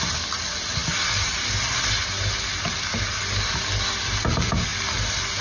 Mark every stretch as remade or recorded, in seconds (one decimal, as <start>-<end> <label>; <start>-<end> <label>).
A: 0.0-5.4 recorded

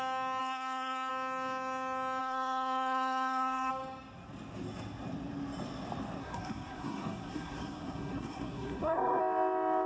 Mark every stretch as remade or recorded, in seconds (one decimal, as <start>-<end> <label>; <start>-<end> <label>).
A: 0.0-0.4 recorded; 0.4-1.1 remade; 1.1-2.2 recorded; 2.2-3.7 remade; 3.7-6.2 recorded; 6.2-9.2 remade; 9.2-9.9 recorded